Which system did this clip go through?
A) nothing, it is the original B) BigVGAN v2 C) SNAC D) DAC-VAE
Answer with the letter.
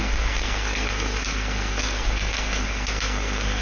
C